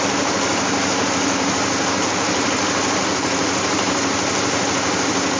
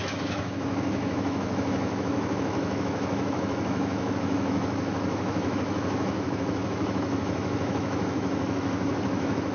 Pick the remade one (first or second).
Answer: second